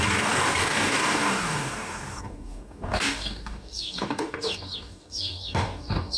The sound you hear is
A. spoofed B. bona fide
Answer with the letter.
A